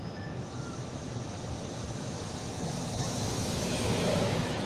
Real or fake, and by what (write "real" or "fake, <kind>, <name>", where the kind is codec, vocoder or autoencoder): fake, autoencoder, DAC-VAE